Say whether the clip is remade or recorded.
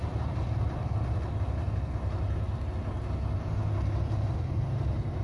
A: recorded